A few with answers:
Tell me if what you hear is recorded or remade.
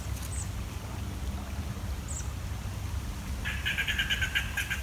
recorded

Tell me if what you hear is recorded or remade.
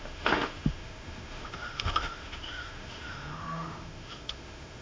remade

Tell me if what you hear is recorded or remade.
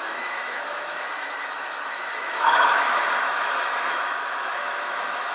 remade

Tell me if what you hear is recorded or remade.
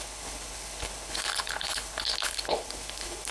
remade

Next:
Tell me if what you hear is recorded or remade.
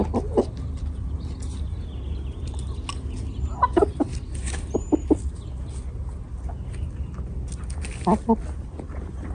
recorded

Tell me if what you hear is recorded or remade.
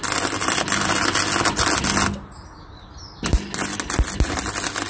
recorded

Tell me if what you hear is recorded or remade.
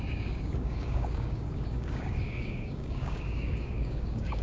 remade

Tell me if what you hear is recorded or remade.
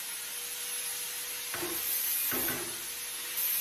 recorded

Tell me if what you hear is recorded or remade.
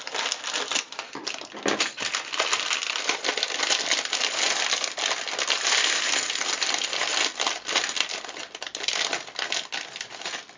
recorded